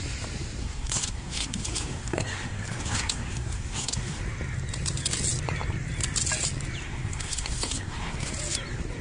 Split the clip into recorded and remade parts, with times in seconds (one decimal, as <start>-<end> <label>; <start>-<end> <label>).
0.0-0.6 recorded; 0.6-4.2 remade; 4.2-6.8 recorded; 6.8-8.3 remade; 8.3-9.0 recorded